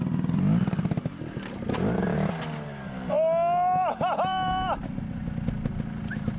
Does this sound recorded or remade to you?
recorded